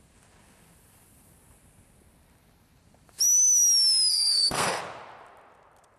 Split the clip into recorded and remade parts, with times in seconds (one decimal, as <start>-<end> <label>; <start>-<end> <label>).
0.0-4.1 recorded; 4.1-4.8 remade; 4.8-6.0 recorded